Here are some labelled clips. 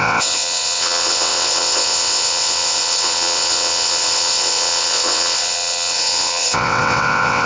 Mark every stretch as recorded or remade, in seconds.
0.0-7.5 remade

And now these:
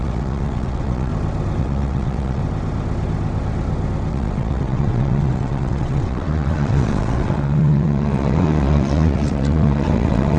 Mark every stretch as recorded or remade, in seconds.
0.0-1.1 remade; 1.1-1.6 recorded; 1.6-2.4 remade; 2.4-4.1 recorded; 4.1-10.4 remade

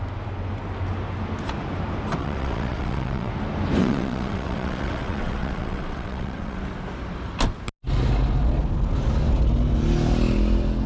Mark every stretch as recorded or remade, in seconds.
0.0-2.2 recorded; 2.2-3.3 remade; 3.3-3.8 recorded; 3.8-6.6 remade; 6.6-10.9 recorded

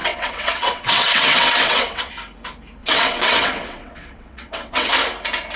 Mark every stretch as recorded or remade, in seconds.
0.0-2.1 remade; 2.1-2.8 recorded; 2.8-4.9 remade; 4.9-5.6 recorded

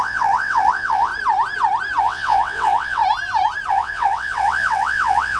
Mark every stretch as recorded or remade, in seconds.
0.0-1.1 remade; 1.1-2.0 recorded; 2.0-3.0 remade; 3.0-3.7 recorded; 3.7-5.4 remade

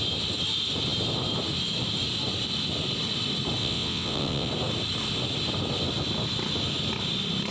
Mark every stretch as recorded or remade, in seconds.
0.0-3.6 recorded; 3.6-4.5 remade; 4.5-7.5 recorded

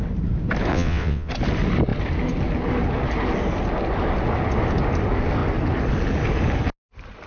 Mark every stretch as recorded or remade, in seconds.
0.0-0.7 recorded; 0.7-1.3 remade; 1.3-7.3 recorded